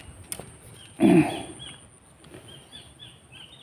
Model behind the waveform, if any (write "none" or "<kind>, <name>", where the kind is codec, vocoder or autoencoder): none